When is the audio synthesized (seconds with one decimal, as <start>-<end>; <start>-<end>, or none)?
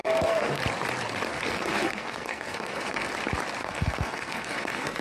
0.0-0.6; 1.3-3.1; 3.6-5.0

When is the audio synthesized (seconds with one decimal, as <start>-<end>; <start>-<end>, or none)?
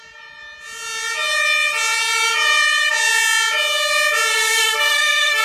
4.3-5.4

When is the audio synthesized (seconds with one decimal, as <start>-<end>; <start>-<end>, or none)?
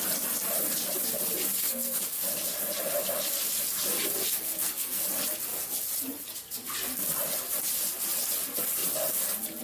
1.6-2.2; 4.2-5.0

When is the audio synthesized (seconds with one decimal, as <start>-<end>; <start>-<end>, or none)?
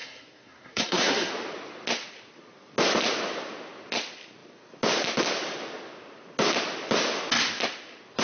0.0-1.3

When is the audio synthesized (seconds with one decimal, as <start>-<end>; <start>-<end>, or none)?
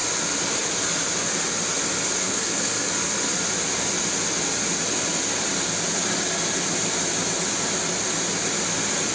2.2-2.9